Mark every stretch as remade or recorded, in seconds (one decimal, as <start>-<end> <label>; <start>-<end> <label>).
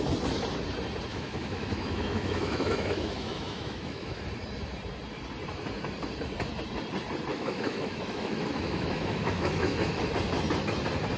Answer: 0.0-1.1 recorded; 1.1-4.2 remade; 4.2-7.3 recorded; 7.3-10.1 remade; 10.1-11.2 recorded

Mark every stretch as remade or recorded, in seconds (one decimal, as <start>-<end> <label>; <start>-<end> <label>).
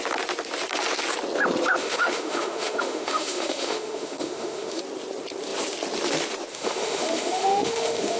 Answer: 0.0-1.8 recorded; 1.8-4.8 remade; 4.8-6.5 recorded; 6.5-8.2 remade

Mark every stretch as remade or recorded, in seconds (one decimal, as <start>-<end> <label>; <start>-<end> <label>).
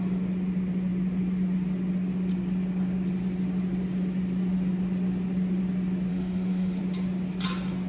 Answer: 0.0-6.1 recorded; 6.1-6.8 remade; 6.8-7.9 recorded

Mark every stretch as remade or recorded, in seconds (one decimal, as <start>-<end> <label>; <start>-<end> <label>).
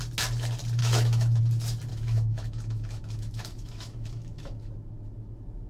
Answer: 0.0-0.8 recorded; 0.8-1.4 remade; 1.4-1.9 recorded; 1.9-4.7 remade; 4.7-5.7 recorded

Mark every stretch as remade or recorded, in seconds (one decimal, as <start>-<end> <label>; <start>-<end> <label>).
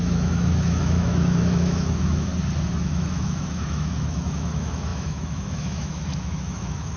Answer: 0.0-2.3 remade; 2.3-2.8 recorded; 2.8-7.0 remade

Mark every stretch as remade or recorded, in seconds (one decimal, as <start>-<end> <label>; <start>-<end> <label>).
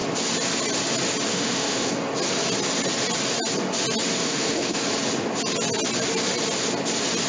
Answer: 0.0-1.3 recorded; 1.3-1.9 remade; 1.9-4.2 recorded; 4.2-4.8 remade; 4.8-7.3 recorded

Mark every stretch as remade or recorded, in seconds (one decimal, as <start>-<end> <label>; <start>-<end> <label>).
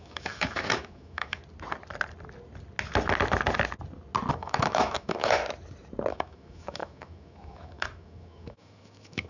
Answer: 0.0-1.4 remade; 1.4-4.3 recorded; 4.3-5.4 remade; 5.4-6.1 recorded; 6.1-9.3 remade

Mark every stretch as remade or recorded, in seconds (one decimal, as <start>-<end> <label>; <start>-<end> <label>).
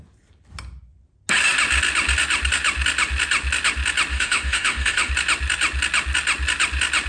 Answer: 0.0-4.1 recorded; 4.1-5.1 remade; 5.1-7.1 recorded